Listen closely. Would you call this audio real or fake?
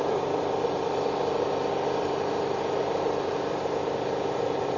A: real